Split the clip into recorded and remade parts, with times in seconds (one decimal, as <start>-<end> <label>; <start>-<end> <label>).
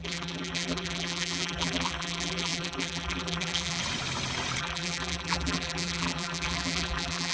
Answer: 0.0-3.8 remade; 3.8-4.6 recorded; 4.6-7.3 remade